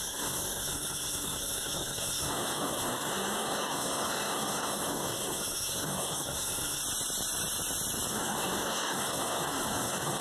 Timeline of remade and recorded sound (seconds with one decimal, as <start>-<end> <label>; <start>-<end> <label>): 0.0-6.8 remade; 6.8-8.1 recorded; 8.1-10.2 remade